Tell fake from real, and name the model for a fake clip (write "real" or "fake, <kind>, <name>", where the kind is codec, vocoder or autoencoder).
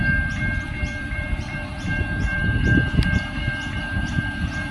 fake, vocoder, BigVGAN v2